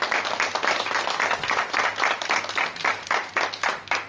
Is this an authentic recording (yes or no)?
yes